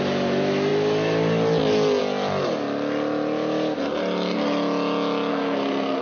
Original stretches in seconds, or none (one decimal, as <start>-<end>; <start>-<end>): 0.0-5.3